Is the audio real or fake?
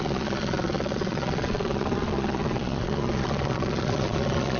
fake